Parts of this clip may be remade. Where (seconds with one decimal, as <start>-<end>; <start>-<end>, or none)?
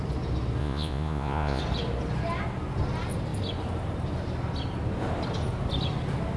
0.6-1.6